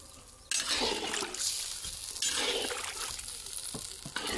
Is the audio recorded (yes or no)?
yes